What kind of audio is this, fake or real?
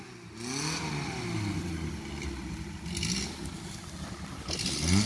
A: real